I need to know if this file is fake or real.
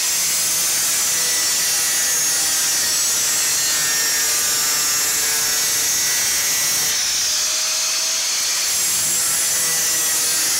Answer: real